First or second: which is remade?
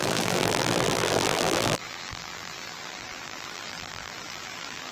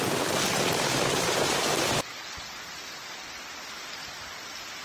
first